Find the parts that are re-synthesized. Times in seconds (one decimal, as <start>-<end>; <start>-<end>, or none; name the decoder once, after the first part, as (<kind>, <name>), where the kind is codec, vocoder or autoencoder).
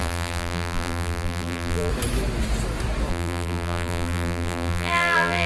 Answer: 0.0-1.9 (vocoder, BigVGAN v2); 3.1-5.5